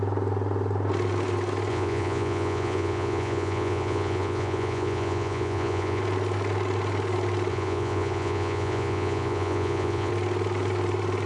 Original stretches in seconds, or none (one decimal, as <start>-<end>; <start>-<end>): 0.0-1.7; 6.0-7.5; 10.1-11.3